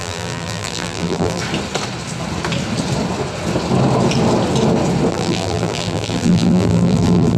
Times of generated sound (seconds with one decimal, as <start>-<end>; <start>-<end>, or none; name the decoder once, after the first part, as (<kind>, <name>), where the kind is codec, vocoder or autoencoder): 0.0-1.4 (vocoder, BigVGAN v2); 5.1-7.4